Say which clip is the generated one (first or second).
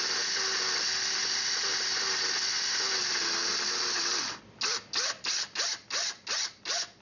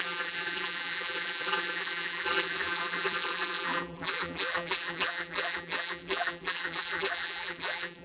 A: second